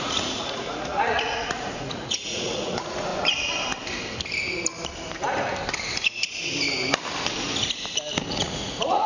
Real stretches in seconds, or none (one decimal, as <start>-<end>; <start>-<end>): 3.1-8.3